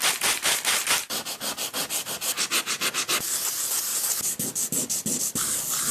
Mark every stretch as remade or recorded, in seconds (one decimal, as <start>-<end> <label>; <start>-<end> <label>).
0.0-5.9 recorded

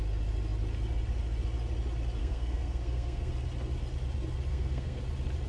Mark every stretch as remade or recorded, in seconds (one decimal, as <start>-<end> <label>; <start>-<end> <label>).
0.0-2.2 recorded; 2.2-3.3 remade; 3.3-4.5 recorded; 4.5-5.0 remade; 5.0-5.5 recorded